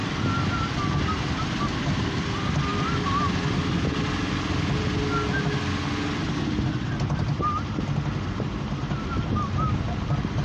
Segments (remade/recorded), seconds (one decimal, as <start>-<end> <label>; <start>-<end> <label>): 0.0-10.4 recorded